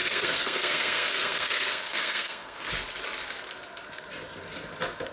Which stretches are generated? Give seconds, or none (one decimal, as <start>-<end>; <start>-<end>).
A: 0.0-2.7